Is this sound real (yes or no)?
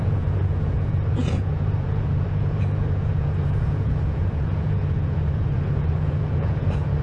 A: no